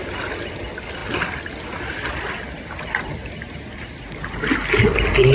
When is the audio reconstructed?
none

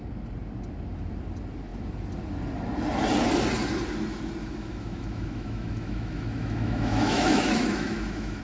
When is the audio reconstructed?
4.4-8.4 (autoencoder, DAC-VAE)

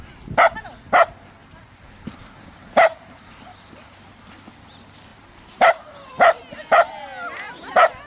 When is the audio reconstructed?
1.4-4.1 (vocoder, BigVGAN v2); 5.1-6.1

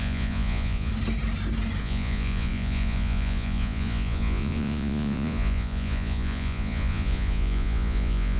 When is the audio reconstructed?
0.0-0.9 (vocoder, Vocos); 1.8-8.4

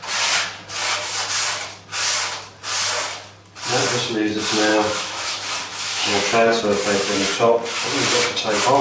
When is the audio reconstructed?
4.7-5.3 (autoencoder, DAC-VAE); 5.7-6.6

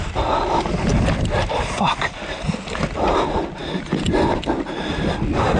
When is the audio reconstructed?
none

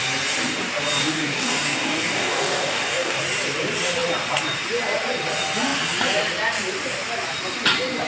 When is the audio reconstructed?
1.0-3.2 (codec, DAC)